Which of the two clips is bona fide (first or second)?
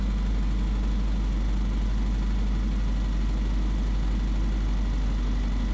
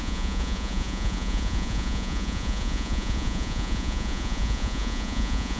first